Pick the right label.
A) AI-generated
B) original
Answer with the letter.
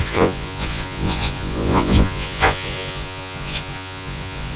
A